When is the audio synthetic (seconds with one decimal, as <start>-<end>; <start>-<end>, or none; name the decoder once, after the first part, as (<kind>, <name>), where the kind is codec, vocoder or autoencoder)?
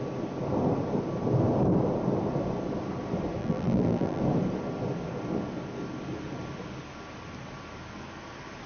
3.4-4.2 (vocoder, BigVGAN v2)